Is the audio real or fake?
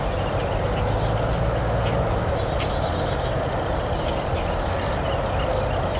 real